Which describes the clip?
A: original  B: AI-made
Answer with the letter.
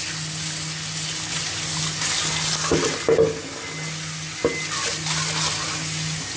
A